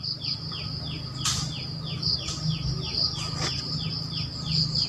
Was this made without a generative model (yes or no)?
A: yes